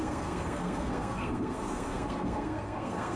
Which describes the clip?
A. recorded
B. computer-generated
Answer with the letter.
B